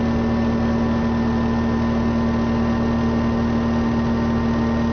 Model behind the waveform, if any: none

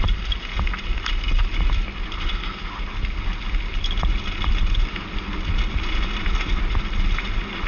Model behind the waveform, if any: none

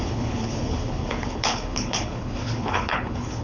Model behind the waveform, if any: codec, HILCodec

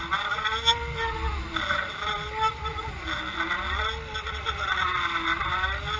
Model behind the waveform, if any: none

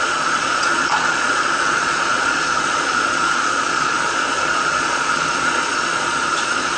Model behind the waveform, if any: vocoder, Vocos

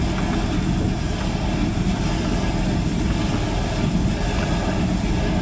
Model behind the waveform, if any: none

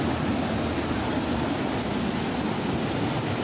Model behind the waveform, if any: none